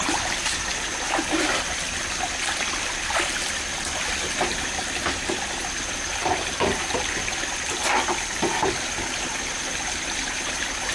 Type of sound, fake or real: real